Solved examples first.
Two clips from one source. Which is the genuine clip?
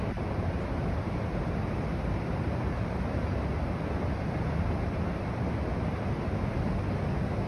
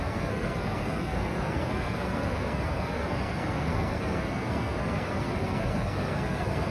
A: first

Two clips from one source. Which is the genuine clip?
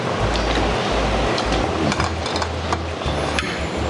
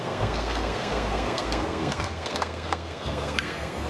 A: first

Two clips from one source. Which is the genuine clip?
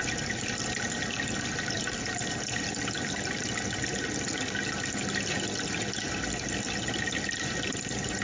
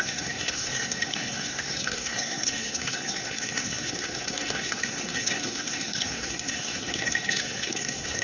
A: first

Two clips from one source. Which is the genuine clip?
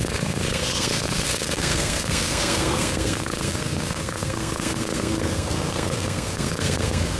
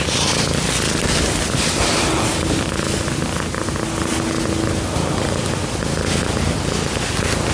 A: second